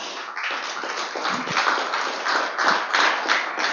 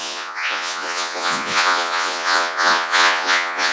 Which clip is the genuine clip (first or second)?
first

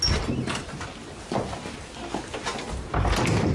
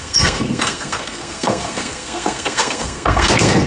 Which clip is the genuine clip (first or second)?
first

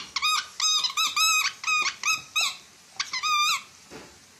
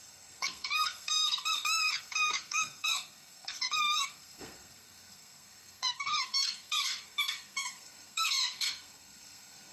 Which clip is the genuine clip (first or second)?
first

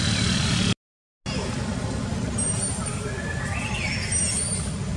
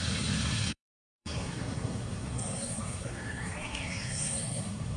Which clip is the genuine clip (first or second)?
first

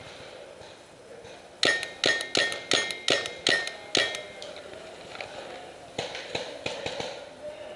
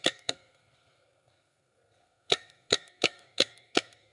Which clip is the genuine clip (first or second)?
first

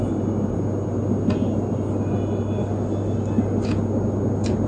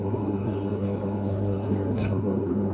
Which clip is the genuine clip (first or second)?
first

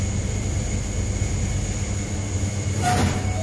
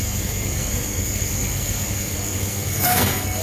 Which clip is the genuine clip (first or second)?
first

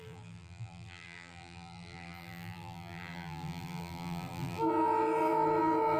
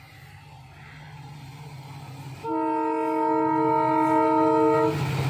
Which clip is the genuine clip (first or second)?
second